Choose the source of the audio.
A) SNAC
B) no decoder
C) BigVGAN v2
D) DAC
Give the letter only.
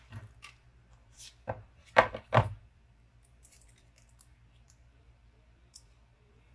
C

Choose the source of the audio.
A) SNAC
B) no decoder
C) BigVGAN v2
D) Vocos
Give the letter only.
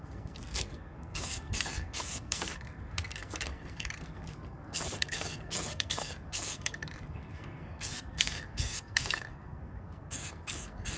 A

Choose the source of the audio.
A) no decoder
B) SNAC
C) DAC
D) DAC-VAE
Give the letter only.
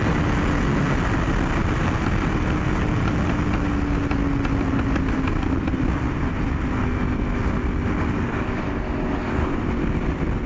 A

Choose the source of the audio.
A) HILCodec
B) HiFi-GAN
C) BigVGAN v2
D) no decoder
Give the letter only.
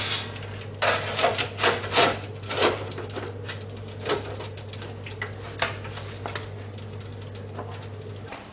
D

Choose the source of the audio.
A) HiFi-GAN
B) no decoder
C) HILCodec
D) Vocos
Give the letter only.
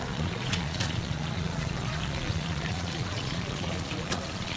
D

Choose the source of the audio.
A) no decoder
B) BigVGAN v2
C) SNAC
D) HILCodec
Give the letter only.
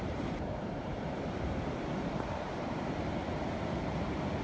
B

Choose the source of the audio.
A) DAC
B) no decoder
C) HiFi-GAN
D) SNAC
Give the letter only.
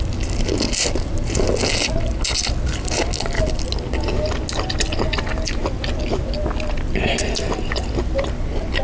B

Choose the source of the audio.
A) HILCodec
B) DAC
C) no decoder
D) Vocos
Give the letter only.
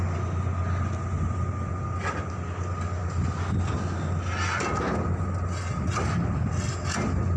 C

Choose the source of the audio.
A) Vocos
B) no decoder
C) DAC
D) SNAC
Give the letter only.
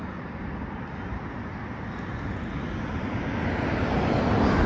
B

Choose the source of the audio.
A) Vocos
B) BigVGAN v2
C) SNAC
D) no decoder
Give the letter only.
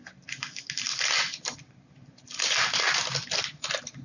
D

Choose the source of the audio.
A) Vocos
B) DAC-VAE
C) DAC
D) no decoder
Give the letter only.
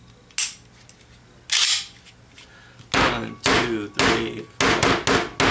D